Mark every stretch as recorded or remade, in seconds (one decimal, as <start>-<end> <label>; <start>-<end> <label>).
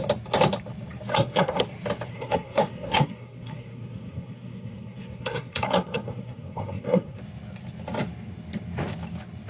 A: 0.0-1.1 recorded; 1.1-1.6 remade; 1.6-2.1 recorded; 2.1-7.2 remade; 7.2-9.5 recorded